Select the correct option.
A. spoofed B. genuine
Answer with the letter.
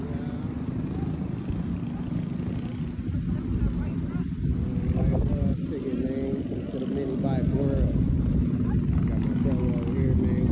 B